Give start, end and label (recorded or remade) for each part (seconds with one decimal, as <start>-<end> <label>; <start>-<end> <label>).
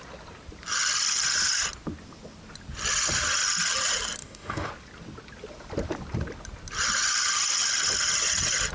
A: 0.0-4.2 recorded; 4.2-4.7 remade; 4.7-8.7 recorded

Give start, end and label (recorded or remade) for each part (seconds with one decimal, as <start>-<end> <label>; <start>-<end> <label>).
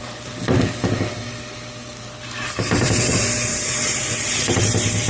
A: 0.0-3.5 recorded; 3.5-4.6 remade; 4.6-5.1 recorded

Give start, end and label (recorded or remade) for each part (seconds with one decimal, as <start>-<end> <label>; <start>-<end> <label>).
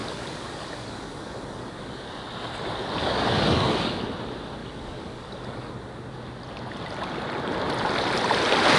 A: 0.0-2.1 remade; 2.1-3.0 recorded; 3.0-4.0 remade; 4.0-4.6 recorded; 4.6-5.7 remade; 5.7-8.8 recorded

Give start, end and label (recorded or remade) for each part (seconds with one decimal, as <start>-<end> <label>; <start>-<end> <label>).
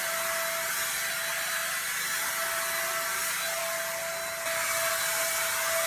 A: 0.0-5.9 recorded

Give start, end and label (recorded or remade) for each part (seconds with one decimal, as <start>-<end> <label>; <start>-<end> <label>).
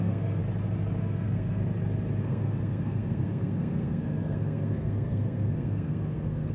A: 0.0-0.4 remade; 0.4-1.0 recorded; 1.0-1.6 remade; 1.6-2.2 recorded; 2.2-6.5 remade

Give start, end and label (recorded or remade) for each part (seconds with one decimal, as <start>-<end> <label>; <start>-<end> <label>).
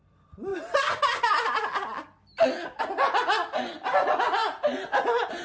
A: 0.0-0.5 recorded; 0.5-1.0 remade; 1.0-4.4 recorded; 4.4-5.0 remade; 5.0-5.4 recorded